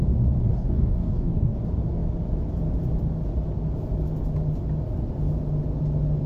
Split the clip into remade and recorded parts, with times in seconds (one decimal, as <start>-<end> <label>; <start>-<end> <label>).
0.0-0.5 recorded; 0.5-1.6 remade; 1.6-6.3 recorded